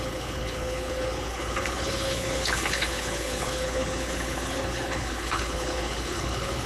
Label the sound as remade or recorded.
remade